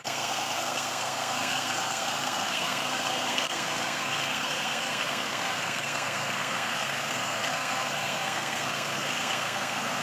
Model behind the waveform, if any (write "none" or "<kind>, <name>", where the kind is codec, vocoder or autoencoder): codec, SNAC